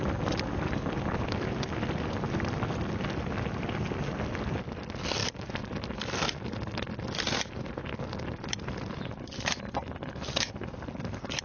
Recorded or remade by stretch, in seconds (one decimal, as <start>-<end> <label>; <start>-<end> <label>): 0.0-11.4 recorded